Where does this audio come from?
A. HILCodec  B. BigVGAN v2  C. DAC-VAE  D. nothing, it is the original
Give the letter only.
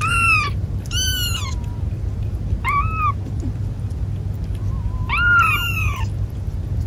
D